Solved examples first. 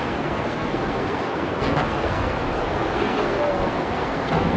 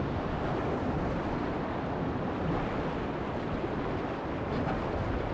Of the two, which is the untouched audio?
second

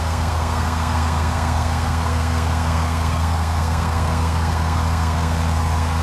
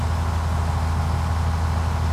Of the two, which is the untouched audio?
second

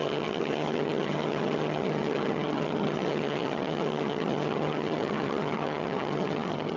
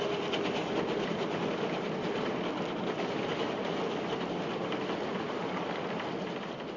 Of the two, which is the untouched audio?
second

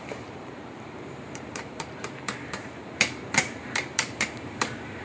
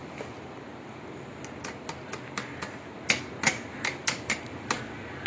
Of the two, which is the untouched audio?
second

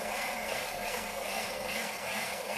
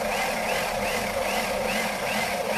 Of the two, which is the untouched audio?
second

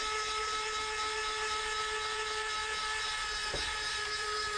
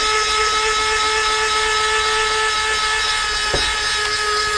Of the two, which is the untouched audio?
second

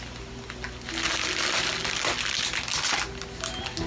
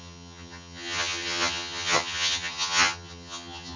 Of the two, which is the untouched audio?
first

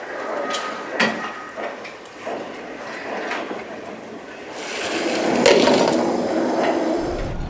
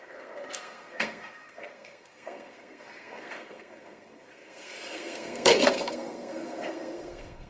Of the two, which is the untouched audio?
first